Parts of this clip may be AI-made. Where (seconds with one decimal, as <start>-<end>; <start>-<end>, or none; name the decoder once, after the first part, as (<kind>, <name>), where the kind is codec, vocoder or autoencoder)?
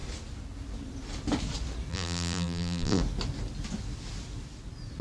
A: 1.9-3.0 (vocoder, BigVGAN v2)